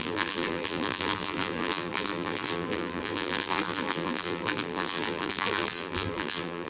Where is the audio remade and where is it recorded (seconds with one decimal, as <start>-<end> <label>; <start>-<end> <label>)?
0.0-6.7 remade